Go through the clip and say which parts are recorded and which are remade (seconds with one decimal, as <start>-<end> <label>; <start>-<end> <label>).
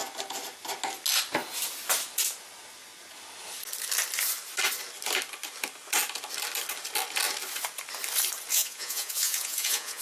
0.0-8.5 recorded; 8.5-10.0 remade